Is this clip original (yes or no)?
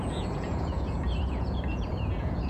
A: no